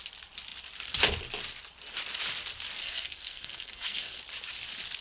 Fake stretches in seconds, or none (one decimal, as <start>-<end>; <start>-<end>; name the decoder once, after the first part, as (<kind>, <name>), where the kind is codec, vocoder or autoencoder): 2.8-4.2 (codec, SNAC)